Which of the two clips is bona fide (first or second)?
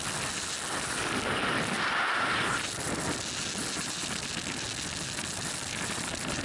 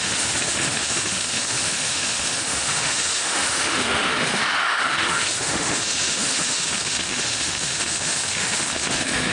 first